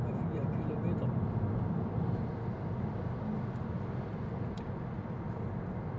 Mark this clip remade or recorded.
recorded